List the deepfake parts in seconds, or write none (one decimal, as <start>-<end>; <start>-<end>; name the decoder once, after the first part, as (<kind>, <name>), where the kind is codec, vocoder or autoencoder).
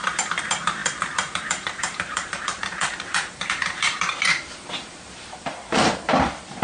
0.0-6.6 (vocoder, BigVGAN v2)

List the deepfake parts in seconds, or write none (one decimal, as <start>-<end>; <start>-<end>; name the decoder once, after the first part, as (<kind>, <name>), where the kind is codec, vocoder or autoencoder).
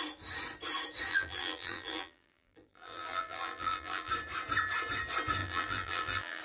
1.1-4.1 (vocoder, BigVGAN v2); 5.4-6.4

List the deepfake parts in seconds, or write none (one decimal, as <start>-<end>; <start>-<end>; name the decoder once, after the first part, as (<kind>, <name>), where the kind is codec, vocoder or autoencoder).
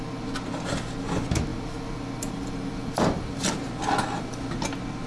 1.5-3.5 (vocoder, BigVGAN v2)